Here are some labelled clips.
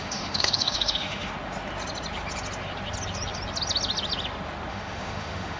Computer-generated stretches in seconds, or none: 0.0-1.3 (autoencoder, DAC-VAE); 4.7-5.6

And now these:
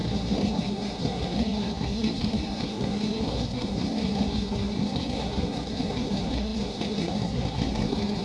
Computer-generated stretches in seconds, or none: 0.0-8.2 (codec, SNAC)

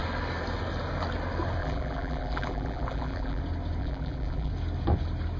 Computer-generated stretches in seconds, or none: 1.6-3.4 (vocoder, BigVGAN v2); 3.8-4.5

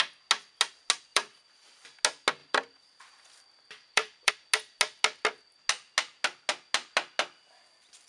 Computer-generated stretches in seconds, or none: 1.1-1.7 (vocoder, BigVGAN v2); 2.4-4.3

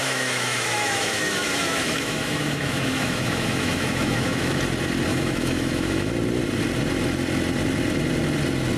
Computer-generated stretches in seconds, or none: 0.0-4.6 (autoencoder, DAC-VAE); 5.1-6.1

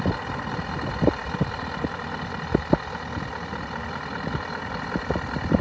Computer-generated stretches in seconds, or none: none

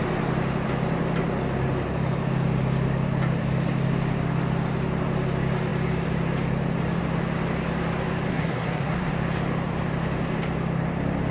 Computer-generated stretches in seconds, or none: 8.3-9.1 (codec, SNAC)